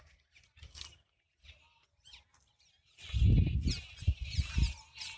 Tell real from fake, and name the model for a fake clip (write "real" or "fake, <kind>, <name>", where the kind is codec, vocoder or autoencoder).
real